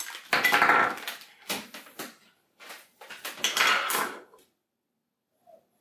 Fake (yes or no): no